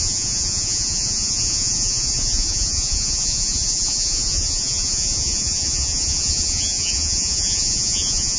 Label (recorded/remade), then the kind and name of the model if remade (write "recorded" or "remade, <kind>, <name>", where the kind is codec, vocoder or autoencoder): remade, vocoder, Vocos